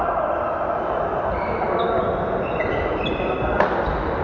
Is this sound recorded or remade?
recorded